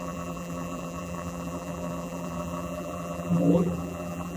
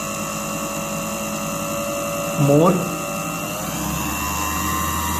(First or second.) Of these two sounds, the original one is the second